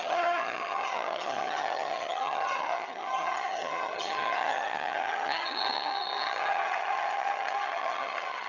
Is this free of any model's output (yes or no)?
no